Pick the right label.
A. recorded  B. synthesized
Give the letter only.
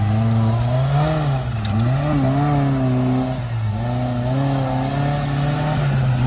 A